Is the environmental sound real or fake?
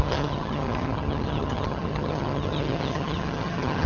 fake